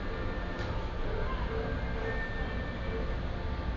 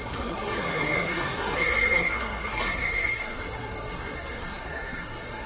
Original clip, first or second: first